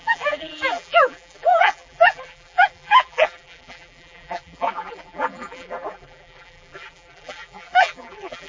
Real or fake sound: fake